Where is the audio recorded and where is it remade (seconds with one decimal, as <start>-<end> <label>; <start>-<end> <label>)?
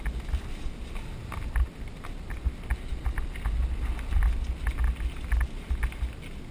0.0-6.5 recorded